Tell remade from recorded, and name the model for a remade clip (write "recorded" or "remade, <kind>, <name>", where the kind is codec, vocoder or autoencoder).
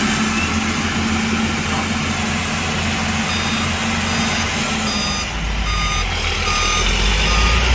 recorded